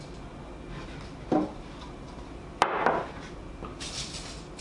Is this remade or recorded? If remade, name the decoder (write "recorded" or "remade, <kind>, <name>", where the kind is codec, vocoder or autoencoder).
recorded